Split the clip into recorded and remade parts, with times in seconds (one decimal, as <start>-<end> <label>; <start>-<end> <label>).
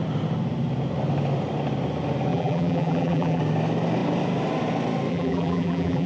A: 0.0-2.3 recorded; 2.3-3.4 remade; 3.4-5.1 recorded; 5.1-6.1 remade